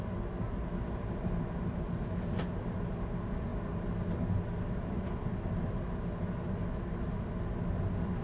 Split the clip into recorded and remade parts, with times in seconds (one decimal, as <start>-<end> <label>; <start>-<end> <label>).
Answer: 0.0-8.2 recorded